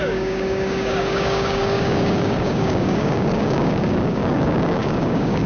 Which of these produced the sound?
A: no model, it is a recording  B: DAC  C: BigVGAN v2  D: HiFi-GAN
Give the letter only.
B